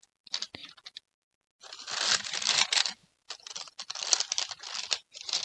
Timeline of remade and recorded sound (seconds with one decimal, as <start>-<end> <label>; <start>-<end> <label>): 0.0-5.4 recorded